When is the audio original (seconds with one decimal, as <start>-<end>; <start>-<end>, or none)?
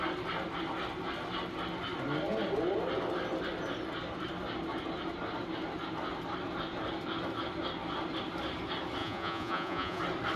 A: 0.0-9.0; 10.0-10.4